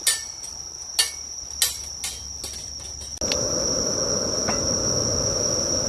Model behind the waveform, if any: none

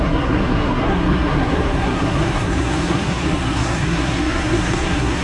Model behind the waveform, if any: codec, SNAC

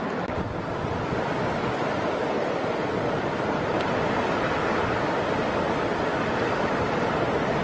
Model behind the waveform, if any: none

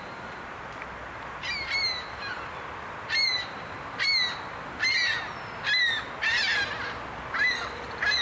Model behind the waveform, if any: none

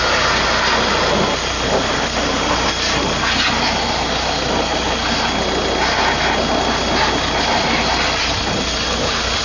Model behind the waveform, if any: none